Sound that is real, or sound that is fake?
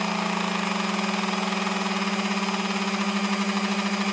real